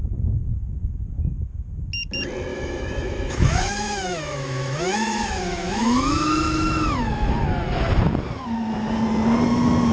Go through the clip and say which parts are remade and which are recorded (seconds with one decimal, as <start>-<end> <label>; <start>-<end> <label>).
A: 0.0-2.5 recorded; 2.5-7.3 remade; 7.3-9.9 recorded